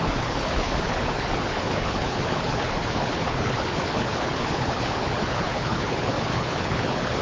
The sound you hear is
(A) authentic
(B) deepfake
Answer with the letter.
B